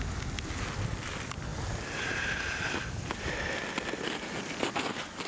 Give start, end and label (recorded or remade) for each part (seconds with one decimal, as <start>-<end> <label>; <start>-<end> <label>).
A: 0.0-5.3 recorded